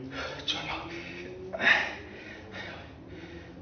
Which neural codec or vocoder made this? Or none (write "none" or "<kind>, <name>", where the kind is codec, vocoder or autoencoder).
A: none